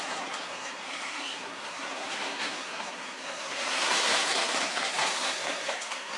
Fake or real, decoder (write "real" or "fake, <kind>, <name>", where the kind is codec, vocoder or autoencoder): fake, codec, SNAC